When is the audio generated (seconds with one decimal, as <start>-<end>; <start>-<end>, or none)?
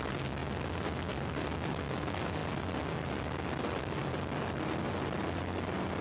none